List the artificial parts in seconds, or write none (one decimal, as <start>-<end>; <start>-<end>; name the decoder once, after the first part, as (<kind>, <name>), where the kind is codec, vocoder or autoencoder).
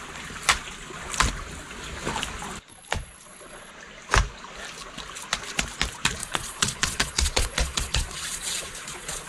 2.7-3.7 (vocoder, Vocos); 6.2-9.3